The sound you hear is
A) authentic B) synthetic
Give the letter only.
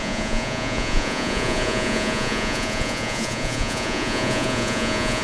B